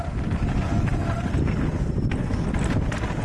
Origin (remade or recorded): recorded